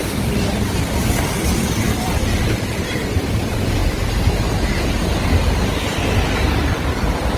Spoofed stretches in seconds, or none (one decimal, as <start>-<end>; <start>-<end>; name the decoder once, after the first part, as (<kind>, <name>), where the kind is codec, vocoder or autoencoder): none